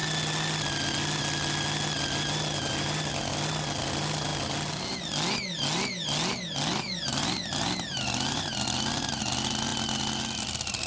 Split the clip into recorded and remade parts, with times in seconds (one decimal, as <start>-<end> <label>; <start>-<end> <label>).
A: 0.0-10.9 recorded